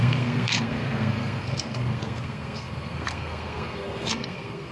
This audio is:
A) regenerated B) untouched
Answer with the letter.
A